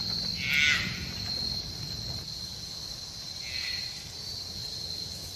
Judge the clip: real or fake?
real